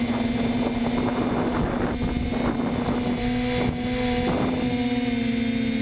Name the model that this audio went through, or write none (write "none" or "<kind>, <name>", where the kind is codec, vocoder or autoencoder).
none